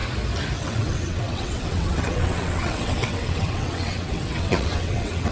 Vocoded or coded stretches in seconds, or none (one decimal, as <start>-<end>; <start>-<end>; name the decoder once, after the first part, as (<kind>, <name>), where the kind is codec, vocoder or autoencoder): 0.6-5.3 (vocoder, WaveNeXt)